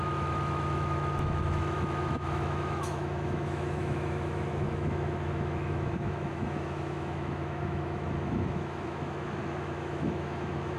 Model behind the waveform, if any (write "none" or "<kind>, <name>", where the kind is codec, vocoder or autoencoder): autoencoder, DAC-VAE